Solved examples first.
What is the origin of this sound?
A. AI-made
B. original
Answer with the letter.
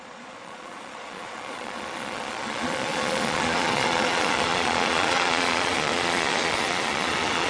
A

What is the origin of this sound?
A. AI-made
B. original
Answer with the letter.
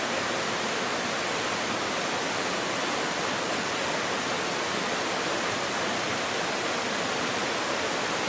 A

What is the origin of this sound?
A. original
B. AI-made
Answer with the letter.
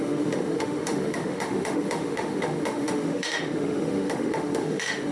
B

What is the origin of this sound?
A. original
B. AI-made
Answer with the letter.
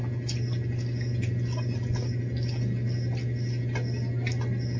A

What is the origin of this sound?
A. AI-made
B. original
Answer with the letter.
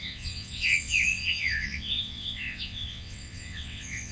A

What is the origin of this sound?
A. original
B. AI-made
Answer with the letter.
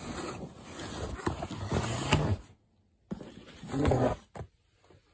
A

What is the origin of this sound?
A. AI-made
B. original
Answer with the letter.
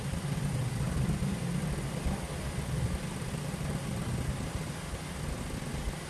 B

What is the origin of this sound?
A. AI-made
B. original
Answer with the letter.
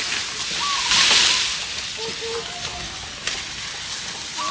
B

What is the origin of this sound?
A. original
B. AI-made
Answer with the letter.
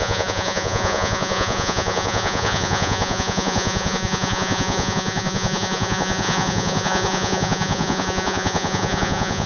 B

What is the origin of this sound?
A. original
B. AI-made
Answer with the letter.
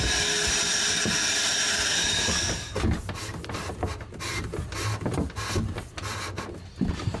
A